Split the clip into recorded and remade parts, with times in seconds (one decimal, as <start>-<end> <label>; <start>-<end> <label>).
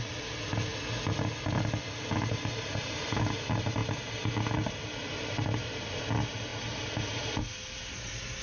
0.0-8.4 recorded